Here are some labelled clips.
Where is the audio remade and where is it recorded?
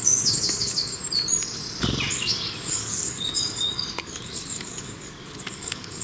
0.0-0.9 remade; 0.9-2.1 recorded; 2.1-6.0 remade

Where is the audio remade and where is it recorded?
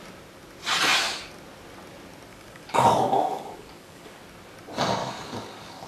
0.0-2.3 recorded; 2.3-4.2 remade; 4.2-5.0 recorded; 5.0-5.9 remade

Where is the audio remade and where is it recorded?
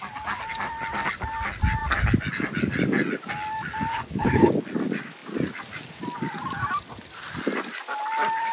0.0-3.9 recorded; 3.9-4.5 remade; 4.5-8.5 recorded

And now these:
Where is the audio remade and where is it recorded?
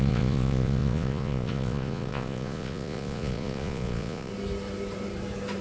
0.0-4.3 remade; 4.3-5.6 recorded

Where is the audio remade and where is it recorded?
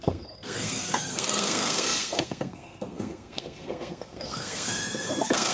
0.0-5.5 remade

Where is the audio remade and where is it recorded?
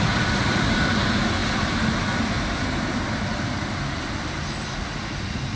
0.0-5.6 recorded